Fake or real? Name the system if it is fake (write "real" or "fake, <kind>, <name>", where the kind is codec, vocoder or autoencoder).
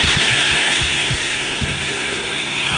fake, codec, SNAC